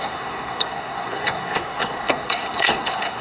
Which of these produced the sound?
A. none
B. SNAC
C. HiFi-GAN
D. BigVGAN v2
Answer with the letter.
B